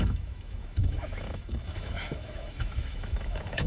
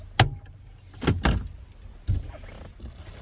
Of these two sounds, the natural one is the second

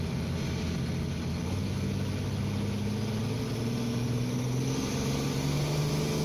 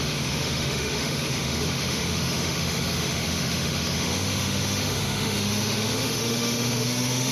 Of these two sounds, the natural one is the first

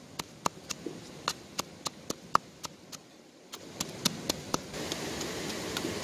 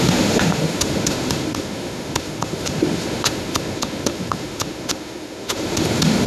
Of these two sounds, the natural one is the first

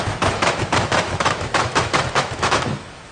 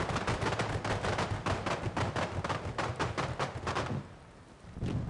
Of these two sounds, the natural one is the second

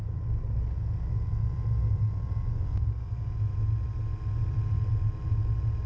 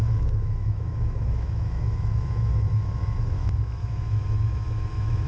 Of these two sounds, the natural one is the first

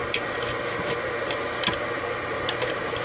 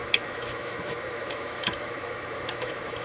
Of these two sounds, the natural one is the first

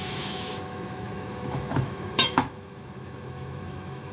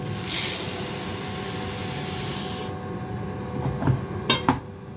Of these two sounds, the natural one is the second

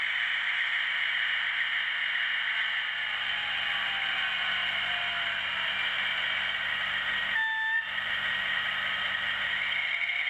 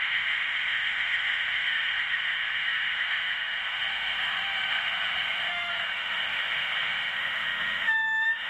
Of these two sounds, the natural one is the first